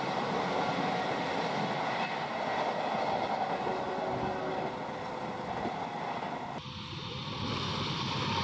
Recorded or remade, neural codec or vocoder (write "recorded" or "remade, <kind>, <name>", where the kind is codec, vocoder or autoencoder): recorded